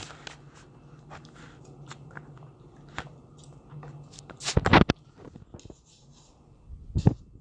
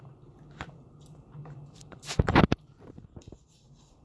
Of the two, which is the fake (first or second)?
second